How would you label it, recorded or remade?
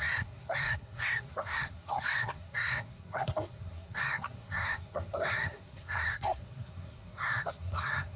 remade